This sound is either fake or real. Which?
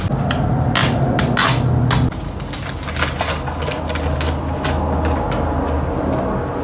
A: real